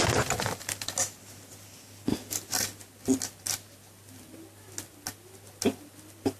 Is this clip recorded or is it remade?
recorded